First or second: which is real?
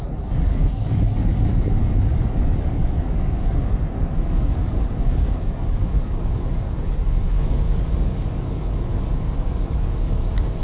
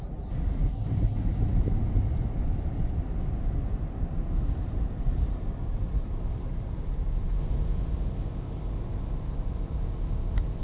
second